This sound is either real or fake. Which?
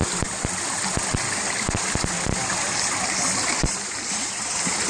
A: fake